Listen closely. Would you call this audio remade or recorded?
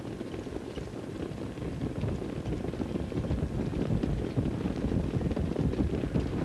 recorded